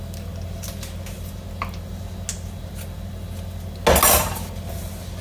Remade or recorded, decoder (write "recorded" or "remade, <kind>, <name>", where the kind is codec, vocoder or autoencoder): recorded